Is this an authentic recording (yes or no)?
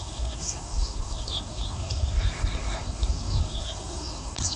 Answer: no